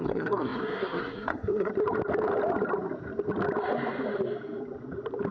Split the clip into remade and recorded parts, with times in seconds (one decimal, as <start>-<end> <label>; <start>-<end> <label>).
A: 0.0-1.7 remade; 1.7-5.3 recorded